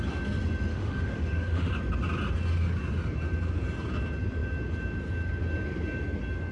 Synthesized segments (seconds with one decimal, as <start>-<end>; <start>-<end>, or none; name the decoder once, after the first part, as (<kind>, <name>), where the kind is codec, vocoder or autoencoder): 0.7-1.7 (autoencoder, DAC-VAE)